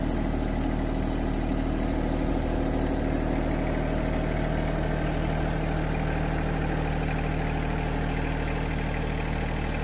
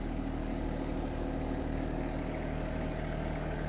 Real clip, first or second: first